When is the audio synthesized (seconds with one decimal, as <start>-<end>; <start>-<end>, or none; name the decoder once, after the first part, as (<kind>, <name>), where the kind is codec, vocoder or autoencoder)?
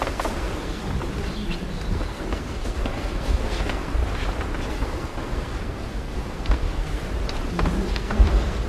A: 0.0-0.8 (codec, SNAC); 1.9-4.0; 4.7-7.0; 7.9-8.7